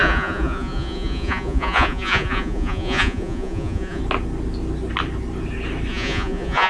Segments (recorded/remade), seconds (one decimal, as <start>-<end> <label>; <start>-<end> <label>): 0.0-4.0 remade; 4.0-5.9 recorded; 5.9-6.7 remade